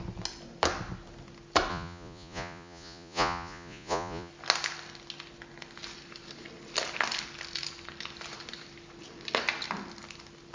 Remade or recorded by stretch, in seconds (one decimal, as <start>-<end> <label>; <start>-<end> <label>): 0.0-1.7 recorded; 1.7-4.3 remade; 4.3-10.5 recorded